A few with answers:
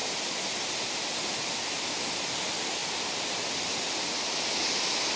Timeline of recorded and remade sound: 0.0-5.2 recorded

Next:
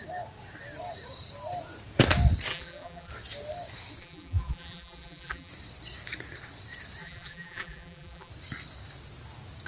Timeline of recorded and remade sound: 0.0-2.5 recorded; 2.5-3.1 remade; 3.1-4.0 recorded; 4.0-5.5 remade; 5.5-7.0 recorded; 7.0-8.3 remade; 8.3-9.7 recorded

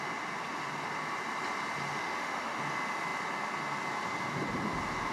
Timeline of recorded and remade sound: 0.0-1.9 recorded; 1.9-2.6 remade; 2.6-5.1 recorded

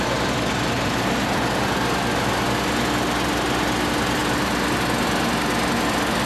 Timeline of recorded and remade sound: 0.0-6.3 recorded

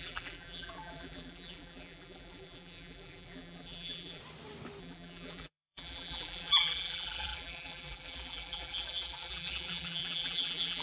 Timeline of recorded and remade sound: 0.0-4.2 remade; 4.2-4.8 recorded; 4.8-10.8 remade